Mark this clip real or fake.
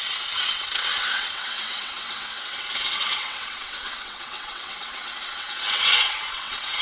fake